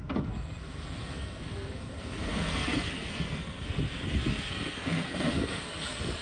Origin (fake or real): fake